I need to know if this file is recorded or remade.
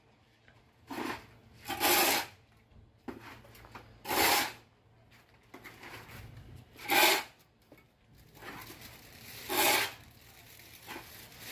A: recorded